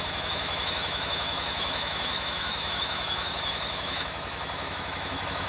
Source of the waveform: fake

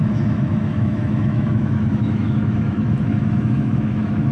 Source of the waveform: fake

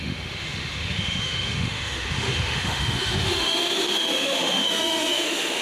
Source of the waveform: fake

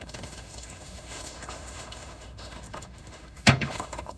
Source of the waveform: fake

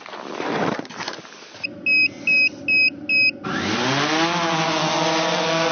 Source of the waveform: real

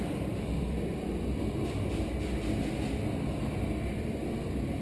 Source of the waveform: real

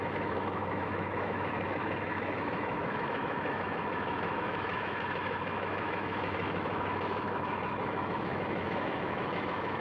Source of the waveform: fake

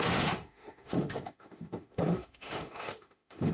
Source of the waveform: fake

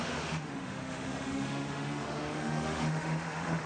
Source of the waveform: fake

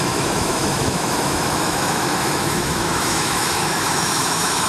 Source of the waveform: fake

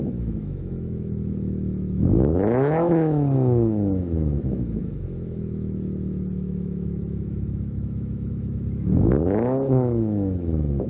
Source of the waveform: fake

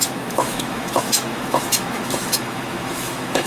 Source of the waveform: fake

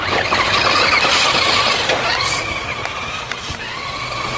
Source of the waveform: real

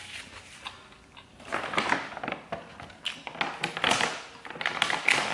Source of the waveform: real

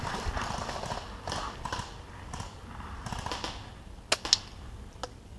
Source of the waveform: real